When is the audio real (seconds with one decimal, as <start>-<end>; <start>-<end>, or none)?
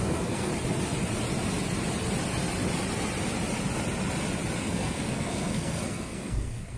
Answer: 0.5-4.6